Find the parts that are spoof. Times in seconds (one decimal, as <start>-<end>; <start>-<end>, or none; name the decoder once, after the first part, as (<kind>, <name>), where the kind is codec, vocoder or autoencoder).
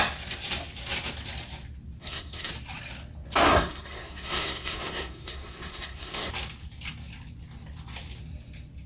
2.0-2.5 (codec, SNAC); 3.5-6.3